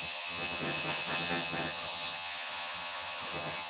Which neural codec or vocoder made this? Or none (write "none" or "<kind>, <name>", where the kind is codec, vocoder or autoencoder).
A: vocoder, HiFi-GAN